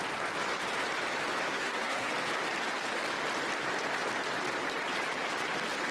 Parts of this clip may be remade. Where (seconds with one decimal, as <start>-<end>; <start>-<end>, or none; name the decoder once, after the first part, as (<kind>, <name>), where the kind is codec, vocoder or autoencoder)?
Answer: 1.5-2.1 (codec, SNAC)

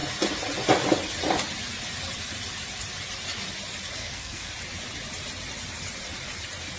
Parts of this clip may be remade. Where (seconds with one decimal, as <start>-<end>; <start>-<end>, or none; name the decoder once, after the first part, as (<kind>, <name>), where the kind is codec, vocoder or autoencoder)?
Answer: 4.0-4.5 (codec, SNAC)